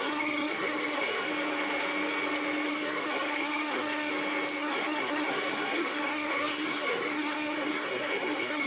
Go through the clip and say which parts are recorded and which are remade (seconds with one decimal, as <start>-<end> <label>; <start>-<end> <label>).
0.0-1.3 remade; 1.3-2.7 recorded; 2.7-4.1 remade; 4.1-4.6 recorded; 4.6-8.7 remade